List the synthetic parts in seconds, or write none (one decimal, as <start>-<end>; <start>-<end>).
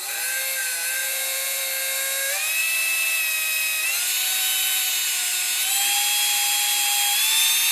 1.0-1.6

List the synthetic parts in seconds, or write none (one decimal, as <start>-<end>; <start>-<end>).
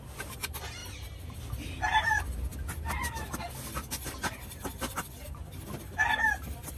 0.8-1.3; 4.7-5.5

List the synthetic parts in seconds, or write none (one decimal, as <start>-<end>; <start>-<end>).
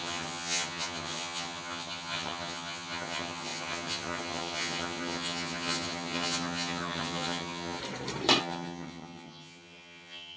0.0-7.8; 8.4-10.4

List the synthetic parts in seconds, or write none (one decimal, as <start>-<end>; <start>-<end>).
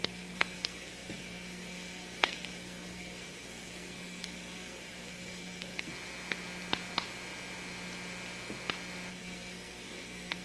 0.0-5.9; 9.1-10.4